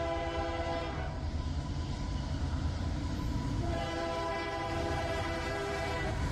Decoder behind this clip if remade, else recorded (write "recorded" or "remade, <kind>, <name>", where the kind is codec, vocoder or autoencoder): remade, vocoder, BigVGAN v2